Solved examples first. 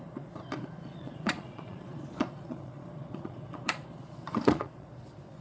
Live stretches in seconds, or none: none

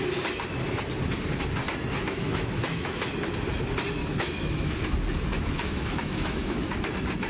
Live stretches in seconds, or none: 0.0-2.0; 3.1-4.0; 4.7-5.3; 6.6-7.3

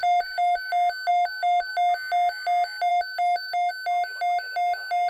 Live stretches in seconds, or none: 0.7-1.1; 1.7-2.9; 3.7-5.1

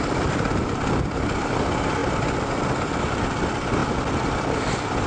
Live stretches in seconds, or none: 3.8-4.4